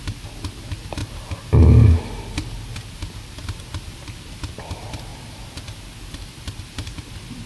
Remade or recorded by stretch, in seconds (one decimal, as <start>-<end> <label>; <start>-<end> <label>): 0.0-7.5 recorded